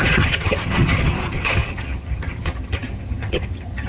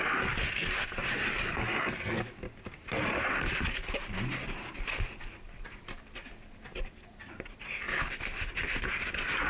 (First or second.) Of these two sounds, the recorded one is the second